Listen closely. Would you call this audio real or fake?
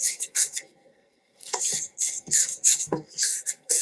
fake